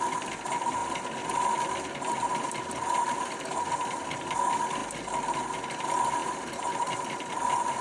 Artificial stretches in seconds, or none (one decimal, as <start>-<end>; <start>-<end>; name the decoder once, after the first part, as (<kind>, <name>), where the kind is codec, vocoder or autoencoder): 0.0-0.8 (vocoder, BigVGAN v2); 3.0-4.8; 5.7-7.8